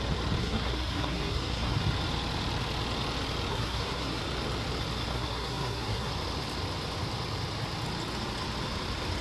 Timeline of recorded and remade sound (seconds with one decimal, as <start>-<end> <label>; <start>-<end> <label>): 0.0-0.4 recorded; 0.4-1.8 remade; 1.8-3.5 recorded; 3.5-4.2 remade; 4.2-5.1 recorded; 5.1-6.1 remade; 6.1-9.2 recorded